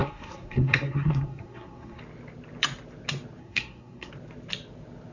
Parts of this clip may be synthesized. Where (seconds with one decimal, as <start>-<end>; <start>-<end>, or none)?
0.0-2.0; 3.4-4.1